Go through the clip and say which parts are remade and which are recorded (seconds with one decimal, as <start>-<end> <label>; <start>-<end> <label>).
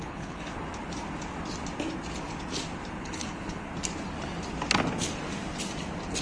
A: 0.0-0.5 remade; 0.5-3.0 recorded; 3.0-3.7 remade; 3.7-6.2 recorded